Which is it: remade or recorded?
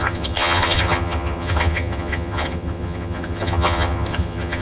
remade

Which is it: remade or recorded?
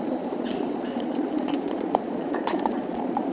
remade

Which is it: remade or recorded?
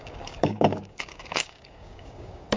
remade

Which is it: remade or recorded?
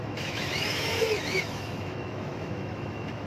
remade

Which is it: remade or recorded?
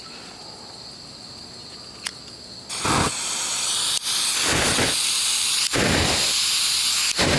recorded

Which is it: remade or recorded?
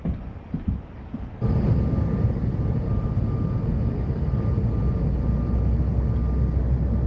recorded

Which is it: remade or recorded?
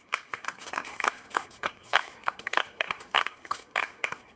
remade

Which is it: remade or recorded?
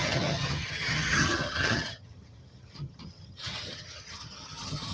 remade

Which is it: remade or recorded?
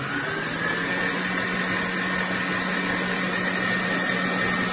recorded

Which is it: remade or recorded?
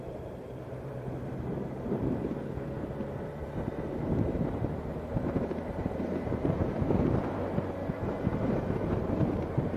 remade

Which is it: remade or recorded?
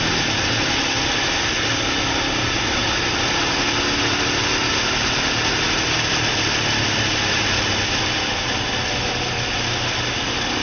recorded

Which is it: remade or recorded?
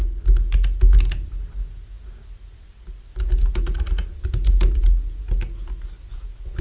recorded